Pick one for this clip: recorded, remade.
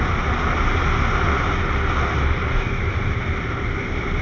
recorded